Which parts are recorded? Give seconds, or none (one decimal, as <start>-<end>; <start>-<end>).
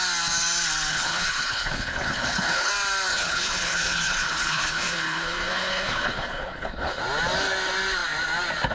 0.0-0.9; 2.7-3.1; 7.0-8.7